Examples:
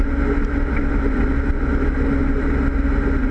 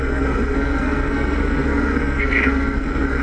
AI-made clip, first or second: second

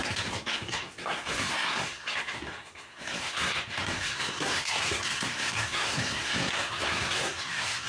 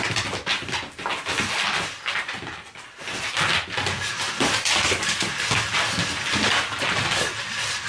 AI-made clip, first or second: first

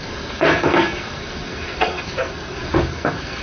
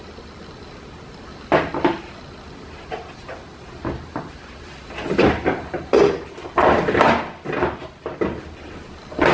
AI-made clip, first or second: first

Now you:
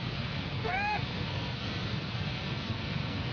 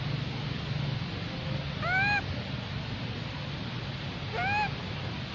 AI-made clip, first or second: first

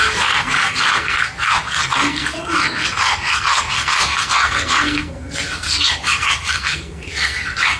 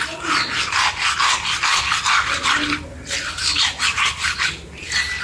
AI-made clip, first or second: first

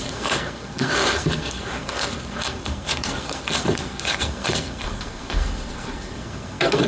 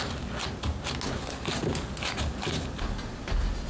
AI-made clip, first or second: first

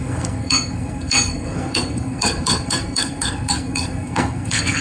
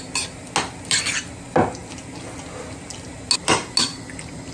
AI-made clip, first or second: first